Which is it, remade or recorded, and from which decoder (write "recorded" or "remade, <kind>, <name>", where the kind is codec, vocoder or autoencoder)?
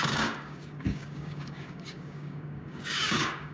remade, codec, DAC